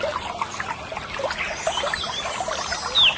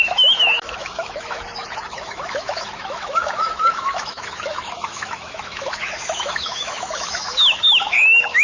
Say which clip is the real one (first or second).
first